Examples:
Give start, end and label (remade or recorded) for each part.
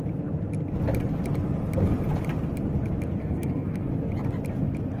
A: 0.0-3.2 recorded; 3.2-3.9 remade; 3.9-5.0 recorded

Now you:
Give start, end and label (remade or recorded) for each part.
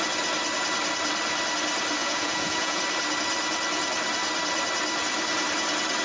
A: 0.0-2.0 recorded; 2.0-2.8 remade; 2.8-6.0 recorded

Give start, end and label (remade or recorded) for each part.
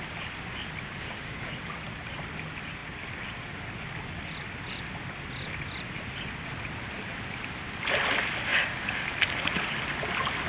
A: 0.0-1.0 recorded; 1.0-1.5 remade; 1.5-10.5 recorded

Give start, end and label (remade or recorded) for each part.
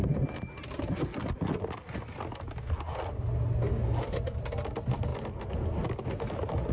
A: 0.0-6.7 recorded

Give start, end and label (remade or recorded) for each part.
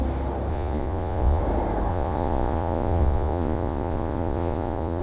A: 0.0-0.5 recorded; 0.5-1.4 remade; 1.4-1.9 recorded; 1.9-5.0 remade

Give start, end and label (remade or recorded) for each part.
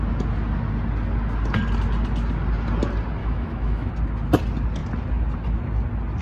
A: 0.0-3.2 recorded; 3.2-3.9 remade; 3.9-6.2 recorded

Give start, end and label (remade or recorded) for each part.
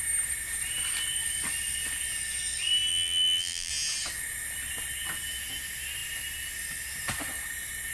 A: 0.0-2.9 recorded; 2.9-3.7 remade; 3.7-7.9 recorded